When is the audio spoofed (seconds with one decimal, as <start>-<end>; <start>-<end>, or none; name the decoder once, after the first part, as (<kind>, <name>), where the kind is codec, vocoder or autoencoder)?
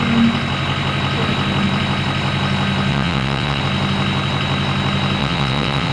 2.9-3.6 (vocoder, WaveNeXt); 5.2-5.9